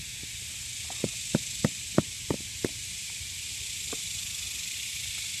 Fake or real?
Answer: real